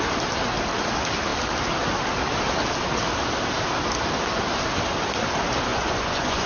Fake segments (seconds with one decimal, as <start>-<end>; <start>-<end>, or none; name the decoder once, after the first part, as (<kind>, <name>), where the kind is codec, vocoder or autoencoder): 5.7-6.5 (vocoder, Vocos)